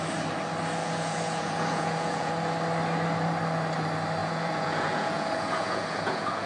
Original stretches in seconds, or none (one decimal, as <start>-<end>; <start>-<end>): 0.0-0.8; 2.3-4.2